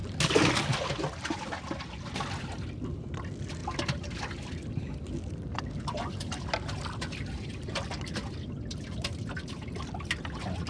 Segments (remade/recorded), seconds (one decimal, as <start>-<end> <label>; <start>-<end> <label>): 0.0-10.7 recorded